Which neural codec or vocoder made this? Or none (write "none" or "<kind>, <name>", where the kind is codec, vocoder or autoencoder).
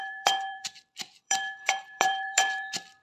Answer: vocoder, BigVGAN v2